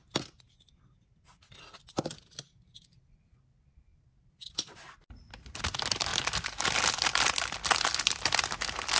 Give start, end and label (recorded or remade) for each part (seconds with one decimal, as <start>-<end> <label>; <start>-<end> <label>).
0.0-9.0 recorded